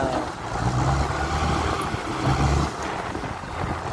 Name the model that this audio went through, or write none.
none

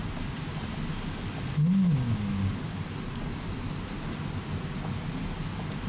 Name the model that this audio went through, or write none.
none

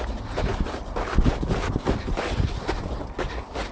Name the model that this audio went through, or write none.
none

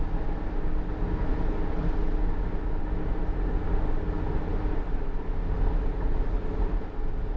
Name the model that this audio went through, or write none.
none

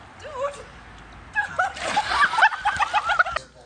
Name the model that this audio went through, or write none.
none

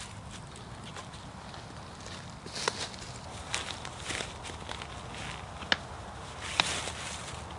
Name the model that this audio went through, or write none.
none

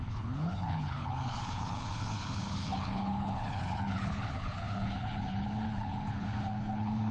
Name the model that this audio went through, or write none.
codec, HILCodec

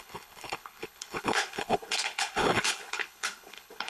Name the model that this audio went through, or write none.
codec, HILCodec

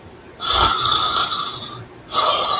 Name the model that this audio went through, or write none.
vocoder, BigVGAN v2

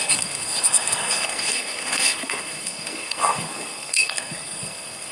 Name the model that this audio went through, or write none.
codec, SNAC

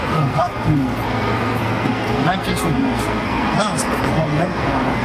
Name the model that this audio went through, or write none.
codec, SNAC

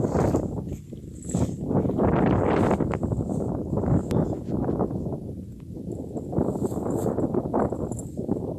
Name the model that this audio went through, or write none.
none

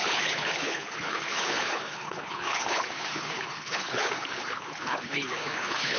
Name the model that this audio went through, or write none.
codec, HILCodec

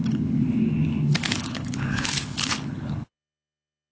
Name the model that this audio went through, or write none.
codec, HILCodec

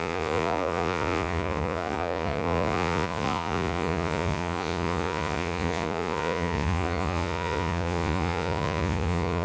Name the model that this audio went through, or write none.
vocoder, Vocos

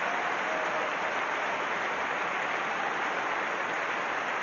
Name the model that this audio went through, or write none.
none